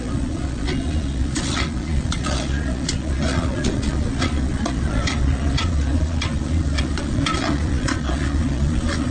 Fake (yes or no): yes